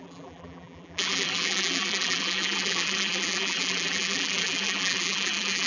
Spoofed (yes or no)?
yes